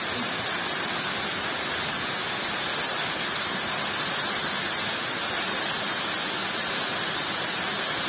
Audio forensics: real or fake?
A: real